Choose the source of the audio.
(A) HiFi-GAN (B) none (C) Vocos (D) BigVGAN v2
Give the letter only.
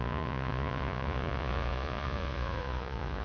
C